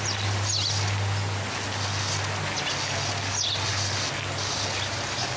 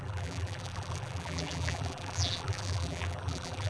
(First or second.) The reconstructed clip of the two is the second